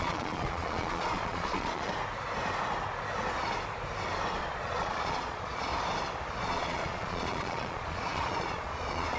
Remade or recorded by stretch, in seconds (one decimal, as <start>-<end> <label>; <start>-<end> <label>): 0.0-1.9 remade; 1.9-4.4 recorded; 4.4-5.7 remade; 5.7-6.4 recorded; 6.4-9.2 remade